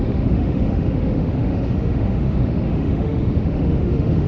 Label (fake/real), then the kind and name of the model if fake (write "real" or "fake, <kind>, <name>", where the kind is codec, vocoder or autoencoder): fake, autoencoder, DAC-VAE